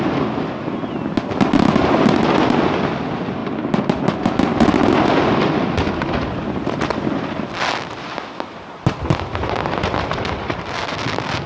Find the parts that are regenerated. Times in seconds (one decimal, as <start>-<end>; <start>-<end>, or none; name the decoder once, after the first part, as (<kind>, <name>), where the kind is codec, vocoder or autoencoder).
none